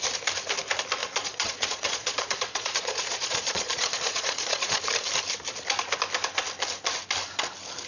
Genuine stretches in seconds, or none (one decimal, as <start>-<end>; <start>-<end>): 0.0-1.0; 4.8-7.9